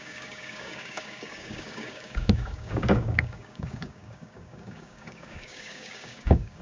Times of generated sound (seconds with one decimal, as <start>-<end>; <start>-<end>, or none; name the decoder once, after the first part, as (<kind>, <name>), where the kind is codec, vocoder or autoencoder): 0.0-6.6 (codec, DAC)